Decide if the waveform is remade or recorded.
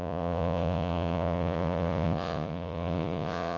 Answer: remade